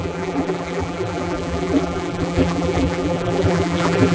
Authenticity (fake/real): fake